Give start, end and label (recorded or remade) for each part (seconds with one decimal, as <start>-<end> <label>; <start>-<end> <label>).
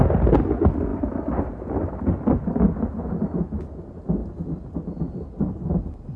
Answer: 0.0-6.2 recorded